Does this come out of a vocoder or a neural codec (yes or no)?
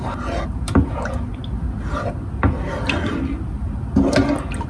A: no